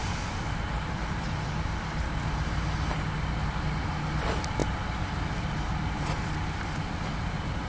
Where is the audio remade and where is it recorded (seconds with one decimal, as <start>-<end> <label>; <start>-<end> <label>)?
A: 0.0-7.7 recorded